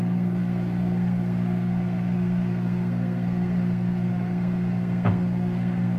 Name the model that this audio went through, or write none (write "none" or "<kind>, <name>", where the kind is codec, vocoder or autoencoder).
codec, SNAC